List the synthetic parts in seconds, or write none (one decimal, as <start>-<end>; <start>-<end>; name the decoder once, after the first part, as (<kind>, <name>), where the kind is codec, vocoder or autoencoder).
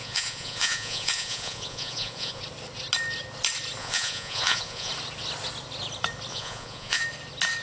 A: 0.0-2.4 (vocoder, Vocos); 3.8-4.9; 6.3-7.0